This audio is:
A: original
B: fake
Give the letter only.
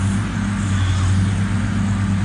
A